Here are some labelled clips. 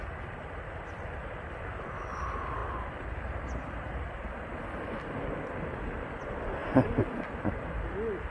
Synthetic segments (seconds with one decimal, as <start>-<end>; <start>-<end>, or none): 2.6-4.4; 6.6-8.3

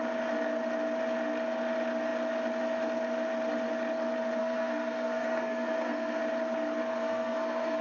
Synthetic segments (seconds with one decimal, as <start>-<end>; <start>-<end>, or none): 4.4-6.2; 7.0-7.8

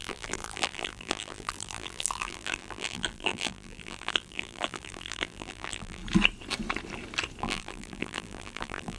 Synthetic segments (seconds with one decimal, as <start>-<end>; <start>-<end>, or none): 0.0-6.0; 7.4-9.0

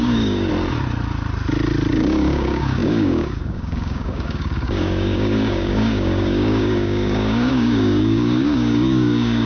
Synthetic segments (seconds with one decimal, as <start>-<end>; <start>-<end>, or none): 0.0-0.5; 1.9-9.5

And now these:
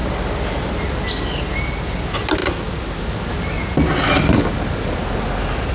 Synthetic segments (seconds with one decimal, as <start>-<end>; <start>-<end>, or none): none

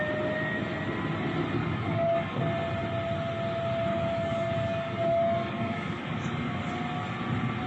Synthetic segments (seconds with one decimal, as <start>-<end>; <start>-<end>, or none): 1.6-2.4; 3.9-6.7

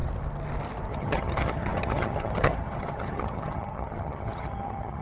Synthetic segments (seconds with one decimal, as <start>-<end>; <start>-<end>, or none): 0.9-5.0

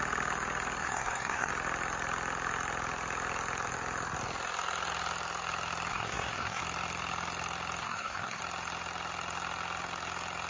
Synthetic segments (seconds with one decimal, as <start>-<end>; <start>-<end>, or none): 0.8-1.5; 5.9-6.6; 7.8-8.4